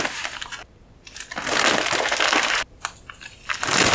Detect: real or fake real